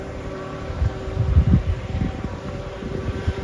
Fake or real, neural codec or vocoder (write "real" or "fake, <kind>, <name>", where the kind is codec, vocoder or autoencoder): fake, vocoder, BigVGAN v2